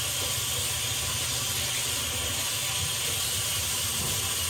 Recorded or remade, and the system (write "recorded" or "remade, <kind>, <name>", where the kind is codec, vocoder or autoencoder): recorded